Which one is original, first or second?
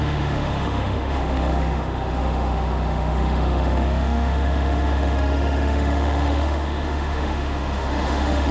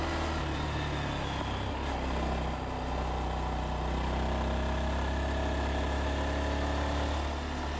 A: second